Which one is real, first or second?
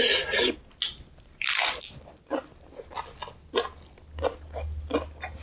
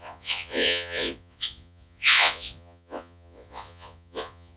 first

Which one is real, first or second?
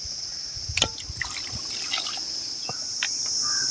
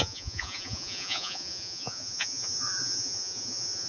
first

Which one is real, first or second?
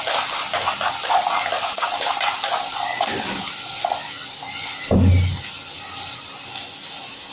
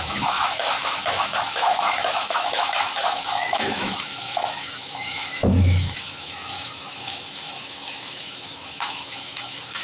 first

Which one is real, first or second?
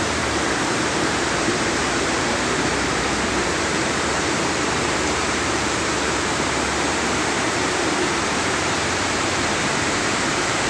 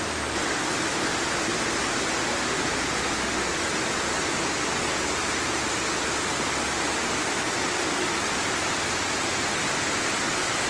second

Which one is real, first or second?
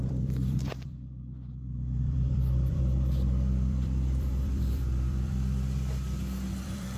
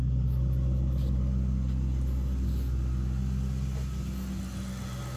second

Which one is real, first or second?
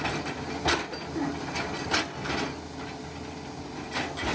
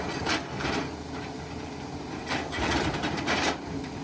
first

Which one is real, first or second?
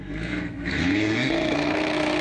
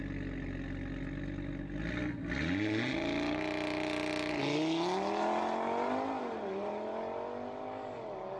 second